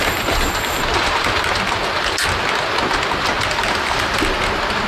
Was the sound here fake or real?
real